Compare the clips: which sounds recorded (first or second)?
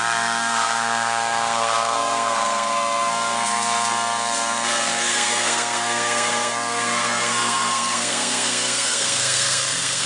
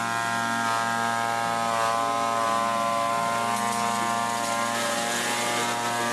second